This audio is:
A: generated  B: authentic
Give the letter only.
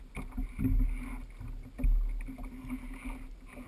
B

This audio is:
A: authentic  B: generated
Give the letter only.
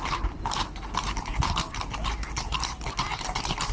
A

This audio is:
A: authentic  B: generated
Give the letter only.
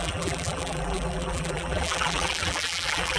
B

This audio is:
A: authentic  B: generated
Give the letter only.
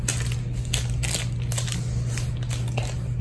A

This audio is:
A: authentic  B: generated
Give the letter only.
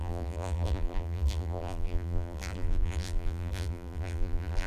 B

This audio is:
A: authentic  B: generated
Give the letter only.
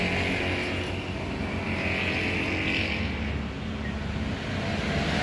A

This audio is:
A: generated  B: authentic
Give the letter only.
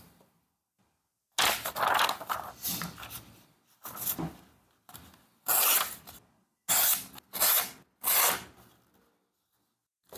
B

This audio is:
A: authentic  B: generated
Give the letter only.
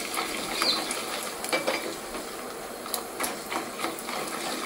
A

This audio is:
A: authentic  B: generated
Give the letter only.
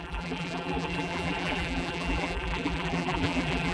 B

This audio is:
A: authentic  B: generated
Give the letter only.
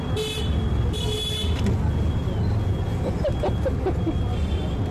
A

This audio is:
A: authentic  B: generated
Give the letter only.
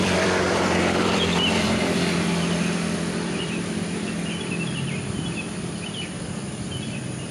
B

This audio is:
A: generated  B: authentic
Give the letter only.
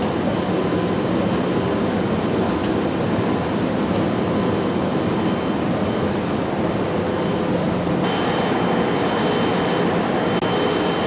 B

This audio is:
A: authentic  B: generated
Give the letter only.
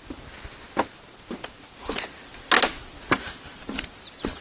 A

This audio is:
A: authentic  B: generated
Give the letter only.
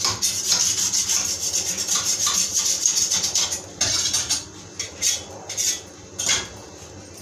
A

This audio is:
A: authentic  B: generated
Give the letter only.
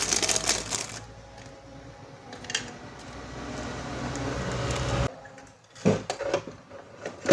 A